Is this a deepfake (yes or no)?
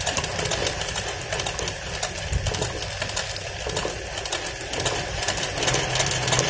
no